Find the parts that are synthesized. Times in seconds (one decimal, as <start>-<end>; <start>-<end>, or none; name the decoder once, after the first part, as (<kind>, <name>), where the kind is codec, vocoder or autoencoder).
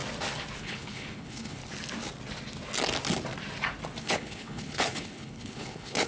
0.6-1.6 (codec, HILCodec); 4.0-6.1